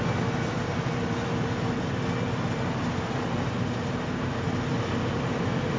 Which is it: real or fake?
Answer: real